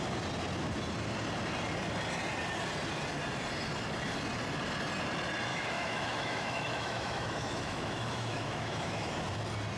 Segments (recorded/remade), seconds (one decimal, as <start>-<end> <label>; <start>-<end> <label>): 0.0-5.5 recorded; 5.5-9.1 remade; 9.1-9.8 recorded

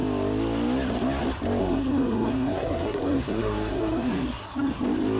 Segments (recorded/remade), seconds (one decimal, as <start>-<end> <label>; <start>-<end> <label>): 0.0-1.6 recorded; 1.6-4.7 remade; 4.7-5.2 recorded